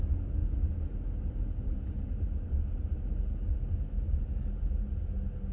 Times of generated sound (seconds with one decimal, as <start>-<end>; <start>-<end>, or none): none